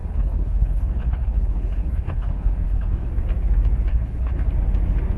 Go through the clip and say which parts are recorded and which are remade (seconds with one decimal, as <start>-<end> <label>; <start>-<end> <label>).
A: 0.0-3.1 remade; 3.1-3.9 recorded; 3.9-4.5 remade; 4.5-5.2 recorded